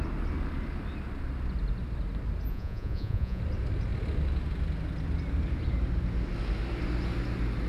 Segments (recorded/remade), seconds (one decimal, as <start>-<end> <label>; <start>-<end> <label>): 0.0-2.5 recorded; 2.5-3.4 remade; 3.4-7.7 recorded